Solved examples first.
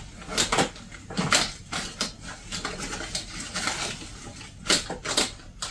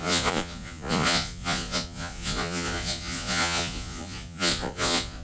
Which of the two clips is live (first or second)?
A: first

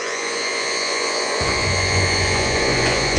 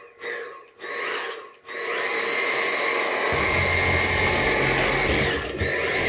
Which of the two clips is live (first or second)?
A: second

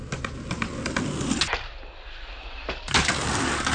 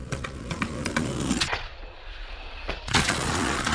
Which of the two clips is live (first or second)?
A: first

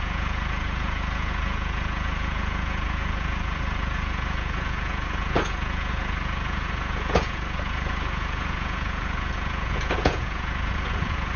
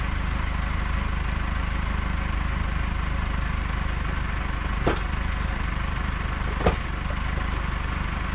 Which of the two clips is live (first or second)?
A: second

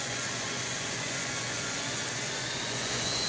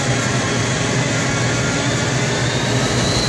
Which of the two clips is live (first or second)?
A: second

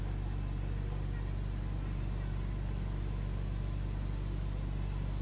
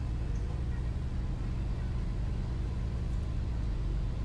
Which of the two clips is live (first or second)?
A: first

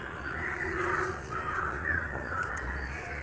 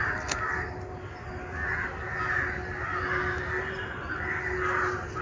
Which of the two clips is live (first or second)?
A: second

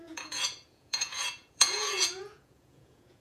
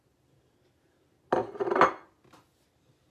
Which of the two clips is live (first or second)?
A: second